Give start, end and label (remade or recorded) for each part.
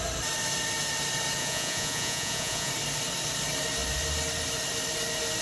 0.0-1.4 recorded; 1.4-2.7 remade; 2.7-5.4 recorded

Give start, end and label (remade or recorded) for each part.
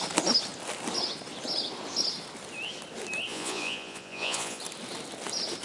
0.0-3.3 recorded; 3.3-4.6 remade; 4.6-5.6 recorded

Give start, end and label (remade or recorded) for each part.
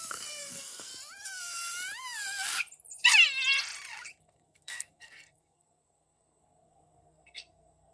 0.0-0.9 remade; 0.9-4.2 recorded; 4.2-7.9 remade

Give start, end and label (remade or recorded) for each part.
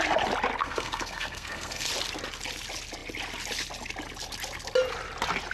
0.0-0.6 recorded; 0.6-1.9 remade; 1.9-5.5 recorded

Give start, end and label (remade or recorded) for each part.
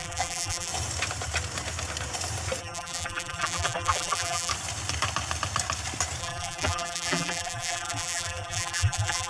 0.0-0.7 remade; 0.7-2.6 recorded; 2.6-4.5 remade; 4.5-6.2 recorded; 6.2-9.3 remade